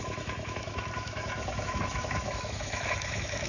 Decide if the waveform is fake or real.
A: fake